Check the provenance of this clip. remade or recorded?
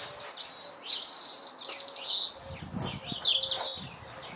recorded